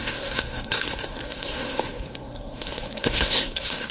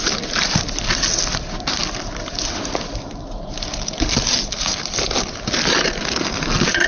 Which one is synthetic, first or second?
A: first